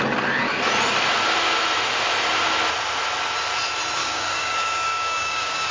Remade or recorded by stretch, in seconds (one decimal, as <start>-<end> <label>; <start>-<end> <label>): 0.0-4.0 recorded; 4.0-5.7 remade